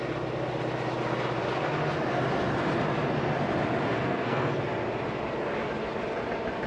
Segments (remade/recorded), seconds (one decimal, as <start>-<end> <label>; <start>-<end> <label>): 0.0-3.9 recorded; 3.9-4.6 remade; 4.6-6.7 recorded